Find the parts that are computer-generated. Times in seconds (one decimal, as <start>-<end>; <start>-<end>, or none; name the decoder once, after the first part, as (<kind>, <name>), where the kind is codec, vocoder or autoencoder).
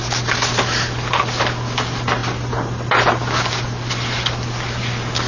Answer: none